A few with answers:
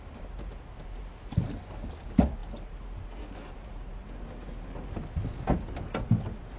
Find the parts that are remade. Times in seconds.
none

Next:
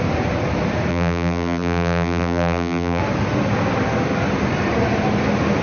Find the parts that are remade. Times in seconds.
0.9-3.0 (vocoder, BigVGAN v2)

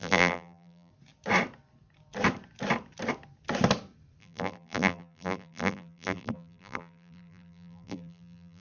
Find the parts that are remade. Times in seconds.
0.0-0.9 (vocoder, BigVGAN v2); 4.2-8.6

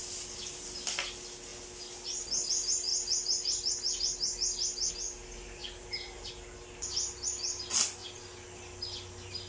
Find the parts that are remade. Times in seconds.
none